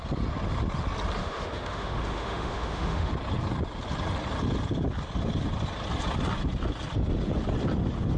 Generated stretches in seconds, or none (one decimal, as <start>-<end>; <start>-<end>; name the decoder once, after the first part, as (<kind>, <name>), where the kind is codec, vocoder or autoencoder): 1.2-3.1 (autoencoder, DAC-VAE)